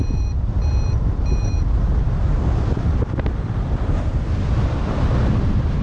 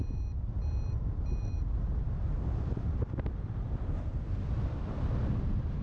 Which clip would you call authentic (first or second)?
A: second